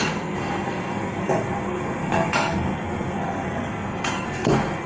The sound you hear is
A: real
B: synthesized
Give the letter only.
B